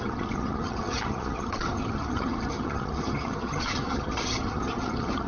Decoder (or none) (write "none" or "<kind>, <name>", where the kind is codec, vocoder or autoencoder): vocoder, HiFi-GAN